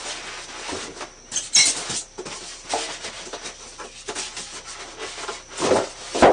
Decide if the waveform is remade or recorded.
recorded